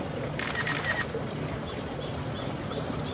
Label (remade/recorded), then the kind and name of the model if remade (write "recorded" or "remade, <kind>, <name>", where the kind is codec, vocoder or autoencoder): recorded